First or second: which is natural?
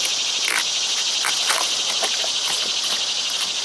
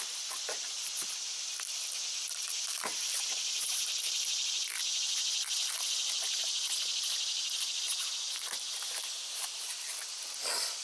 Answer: first